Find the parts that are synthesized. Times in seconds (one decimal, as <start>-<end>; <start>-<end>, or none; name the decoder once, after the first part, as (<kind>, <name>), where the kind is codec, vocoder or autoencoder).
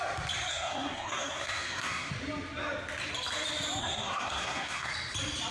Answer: 0.5-2.1 (codec, SNAC); 3.8-4.9